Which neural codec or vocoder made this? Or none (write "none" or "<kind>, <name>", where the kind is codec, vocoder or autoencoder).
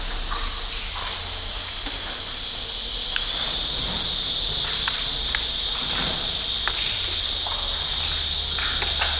none